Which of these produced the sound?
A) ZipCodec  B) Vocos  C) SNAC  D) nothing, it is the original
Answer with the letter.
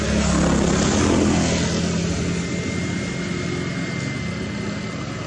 D